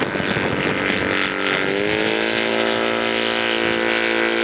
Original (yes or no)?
yes